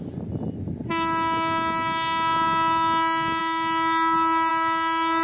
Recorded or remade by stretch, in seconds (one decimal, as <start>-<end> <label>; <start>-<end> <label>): 0.0-5.2 recorded